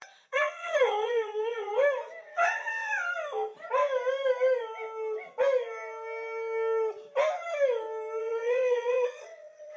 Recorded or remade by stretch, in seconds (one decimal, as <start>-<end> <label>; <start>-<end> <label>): 0.0-1.7 remade; 1.7-2.2 recorded; 2.2-2.9 remade; 2.9-8.2 recorded; 8.2-9.8 remade